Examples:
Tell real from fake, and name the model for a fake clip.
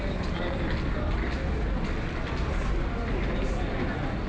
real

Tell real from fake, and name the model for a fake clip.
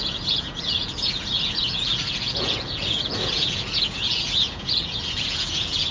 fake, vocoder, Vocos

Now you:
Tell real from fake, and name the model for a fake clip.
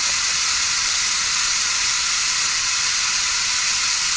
fake, vocoder, Vocos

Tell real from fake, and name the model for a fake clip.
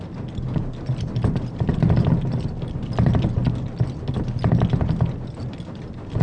real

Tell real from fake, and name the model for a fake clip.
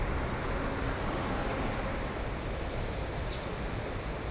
real